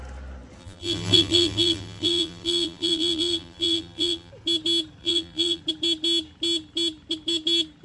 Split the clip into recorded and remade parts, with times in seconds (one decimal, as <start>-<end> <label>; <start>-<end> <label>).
0.0-0.6 recorded; 0.6-4.3 remade; 4.3-5.0 recorded; 5.0-5.6 remade; 5.6-7.8 recorded